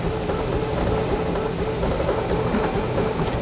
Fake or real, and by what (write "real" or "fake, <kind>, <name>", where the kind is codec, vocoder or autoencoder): real